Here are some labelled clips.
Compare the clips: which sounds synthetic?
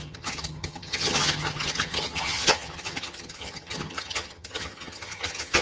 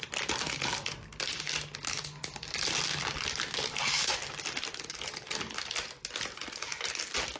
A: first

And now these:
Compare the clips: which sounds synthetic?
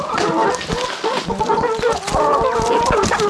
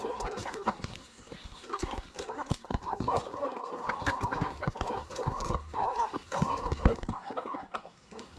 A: second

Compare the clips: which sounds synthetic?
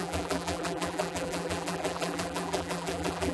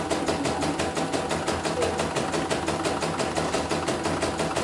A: first